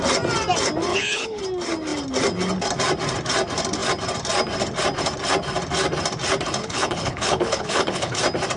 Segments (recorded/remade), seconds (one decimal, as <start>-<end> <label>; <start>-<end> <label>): 0.0-0.9 recorded; 0.9-1.4 remade; 1.4-6.6 recorded; 6.6-8.2 remade; 8.2-8.6 recorded